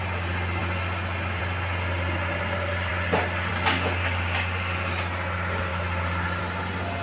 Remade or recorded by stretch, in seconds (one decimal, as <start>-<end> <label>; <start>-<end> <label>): 0.0-7.0 recorded